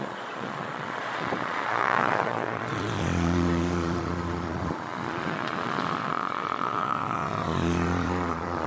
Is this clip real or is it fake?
fake